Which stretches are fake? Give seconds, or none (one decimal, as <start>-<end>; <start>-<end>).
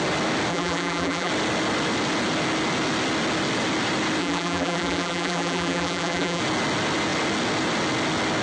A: 0.5-1.3; 4.2-6.4